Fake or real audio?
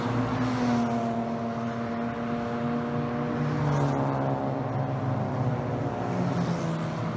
real